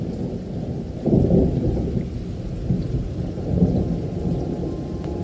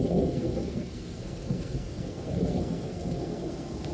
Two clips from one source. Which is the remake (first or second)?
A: second